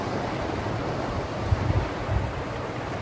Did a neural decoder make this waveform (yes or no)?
no